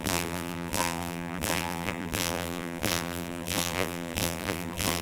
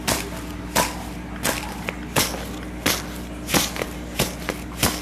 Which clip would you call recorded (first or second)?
second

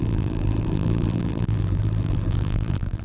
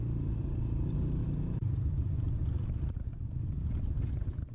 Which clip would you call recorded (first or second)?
second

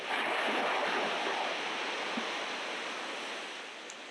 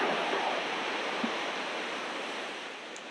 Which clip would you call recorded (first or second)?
first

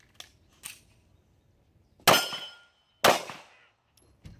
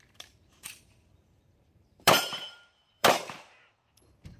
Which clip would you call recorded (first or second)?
first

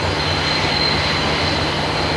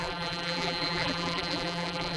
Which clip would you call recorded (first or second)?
first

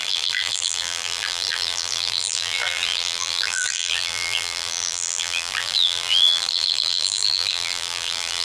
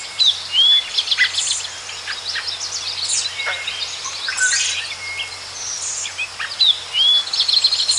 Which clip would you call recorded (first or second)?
second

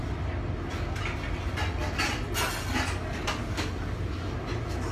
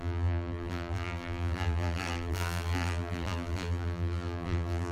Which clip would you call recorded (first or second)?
first